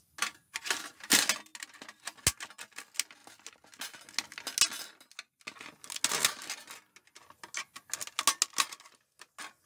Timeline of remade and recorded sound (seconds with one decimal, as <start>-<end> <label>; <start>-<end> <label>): 0.0-9.7 recorded